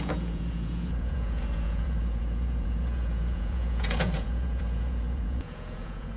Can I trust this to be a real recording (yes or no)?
no